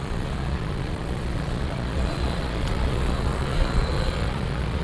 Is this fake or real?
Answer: fake